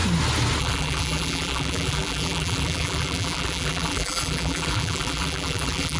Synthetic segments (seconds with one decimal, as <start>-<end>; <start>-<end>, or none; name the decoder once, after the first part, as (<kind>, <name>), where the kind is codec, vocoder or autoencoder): 0.6-6.0 (vocoder, BigVGAN v2)